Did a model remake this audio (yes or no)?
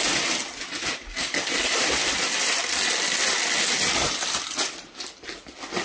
no